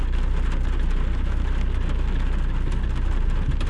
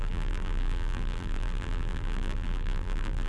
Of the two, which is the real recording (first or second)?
first